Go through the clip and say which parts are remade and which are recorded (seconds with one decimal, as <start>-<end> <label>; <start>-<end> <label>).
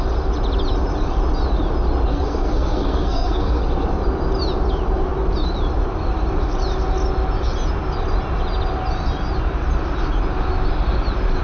0.0-2.1 recorded; 2.1-3.6 remade; 3.6-11.4 recorded